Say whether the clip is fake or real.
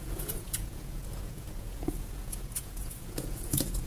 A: fake